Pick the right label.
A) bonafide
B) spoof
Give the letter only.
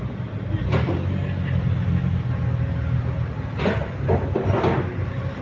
A